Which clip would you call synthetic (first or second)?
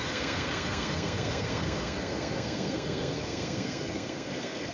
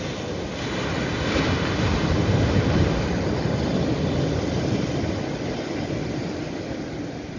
first